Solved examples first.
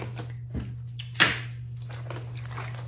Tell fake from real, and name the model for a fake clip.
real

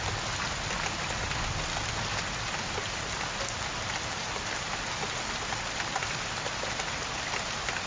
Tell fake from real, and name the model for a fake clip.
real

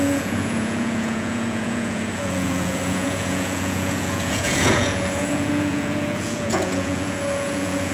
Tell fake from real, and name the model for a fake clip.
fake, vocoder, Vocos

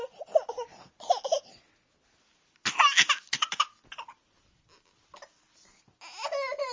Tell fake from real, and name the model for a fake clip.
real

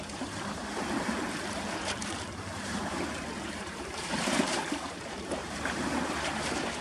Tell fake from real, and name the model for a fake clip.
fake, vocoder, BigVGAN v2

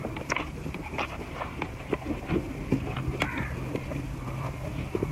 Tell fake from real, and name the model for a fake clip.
real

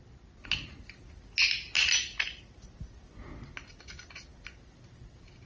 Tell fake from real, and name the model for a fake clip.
real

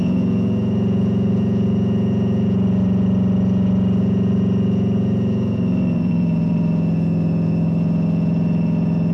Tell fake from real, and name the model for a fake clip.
fake, vocoder, Vocos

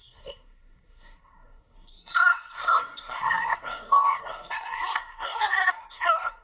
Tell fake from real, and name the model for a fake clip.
fake, codec, SNAC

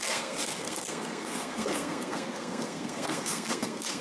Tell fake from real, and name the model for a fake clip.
fake, codec, SNAC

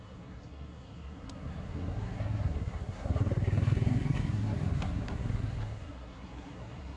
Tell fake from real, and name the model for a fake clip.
fake, codec, SNAC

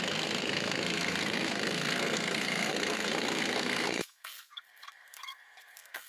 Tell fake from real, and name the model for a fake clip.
fake, codec, SNAC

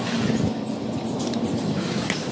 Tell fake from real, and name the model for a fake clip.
fake, vocoder, BigVGAN v2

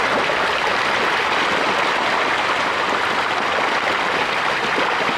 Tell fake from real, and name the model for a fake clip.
real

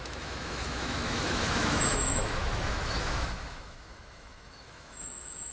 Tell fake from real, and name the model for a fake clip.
fake, autoencoder, DAC-VAE